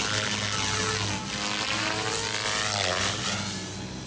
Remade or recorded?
recorded